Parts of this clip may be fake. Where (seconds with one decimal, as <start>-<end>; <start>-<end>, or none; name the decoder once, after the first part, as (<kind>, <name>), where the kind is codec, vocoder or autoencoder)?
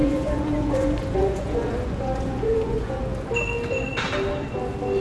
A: 0.0-3.0 (vocoder, Vocos)